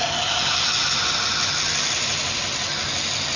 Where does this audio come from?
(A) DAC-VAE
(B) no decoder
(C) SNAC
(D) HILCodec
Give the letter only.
B